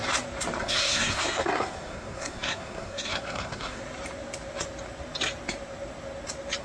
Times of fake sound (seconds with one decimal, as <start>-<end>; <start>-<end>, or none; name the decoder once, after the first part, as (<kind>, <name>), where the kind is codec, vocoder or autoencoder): 0.6-3.8 (codec, SNAC)